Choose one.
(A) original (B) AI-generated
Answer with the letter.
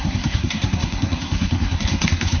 B